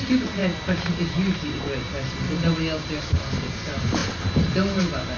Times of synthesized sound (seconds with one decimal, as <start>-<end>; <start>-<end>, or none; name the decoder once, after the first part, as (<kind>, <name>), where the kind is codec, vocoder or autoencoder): none